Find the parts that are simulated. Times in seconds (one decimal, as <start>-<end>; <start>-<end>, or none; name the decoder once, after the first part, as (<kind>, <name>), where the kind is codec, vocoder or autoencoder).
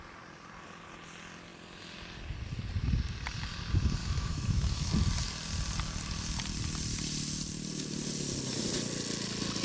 4.0-4.9 (autoencoder, DAC-VAE)